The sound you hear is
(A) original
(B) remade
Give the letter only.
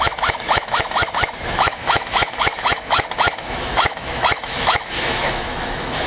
B